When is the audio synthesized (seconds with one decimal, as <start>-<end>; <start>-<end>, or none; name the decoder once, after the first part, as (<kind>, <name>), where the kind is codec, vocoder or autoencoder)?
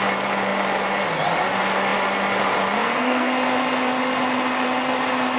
2.8-3.3 (codec, SNAC)